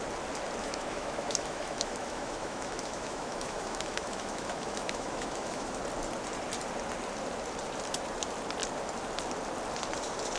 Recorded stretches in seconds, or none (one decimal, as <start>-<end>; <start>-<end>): 0.0-0.6; 5.8-10.4